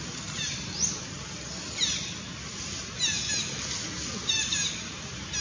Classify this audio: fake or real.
real